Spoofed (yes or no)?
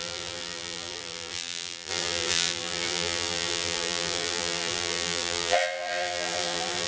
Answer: yes